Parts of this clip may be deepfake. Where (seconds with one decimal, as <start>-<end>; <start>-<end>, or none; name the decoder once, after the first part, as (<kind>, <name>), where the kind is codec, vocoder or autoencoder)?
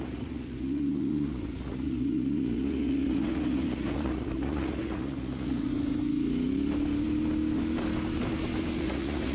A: 0.0-5.7 (vocoder, Vocos); 8.8-9.3